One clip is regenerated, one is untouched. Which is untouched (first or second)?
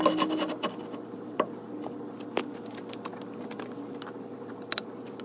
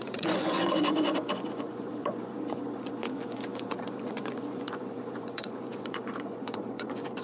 first